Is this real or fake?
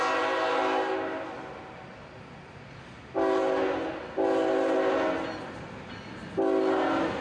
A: real